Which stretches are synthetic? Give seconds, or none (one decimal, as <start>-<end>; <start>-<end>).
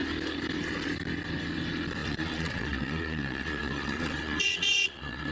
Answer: 2.0-5.3